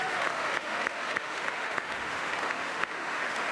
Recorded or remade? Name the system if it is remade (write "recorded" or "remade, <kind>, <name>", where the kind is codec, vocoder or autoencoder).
remade, autoencoder, DAC-VAE